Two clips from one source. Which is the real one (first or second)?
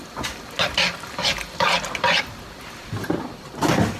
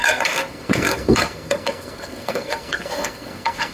first